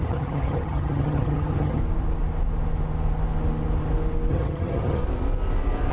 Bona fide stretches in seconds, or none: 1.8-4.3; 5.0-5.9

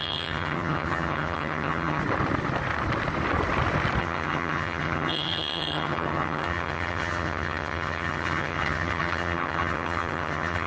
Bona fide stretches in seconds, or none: 2.0-4.0

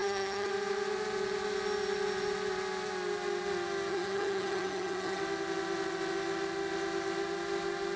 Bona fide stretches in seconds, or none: 0.5-3.9; 5.2-8.0

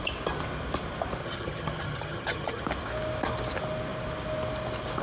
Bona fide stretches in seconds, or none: 0.0-1.2; 2.6-5.0

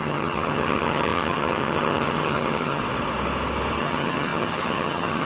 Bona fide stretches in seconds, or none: 2.8-3.8

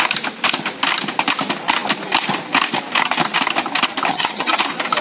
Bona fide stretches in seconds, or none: 0.0-4.1; 4.6-5.0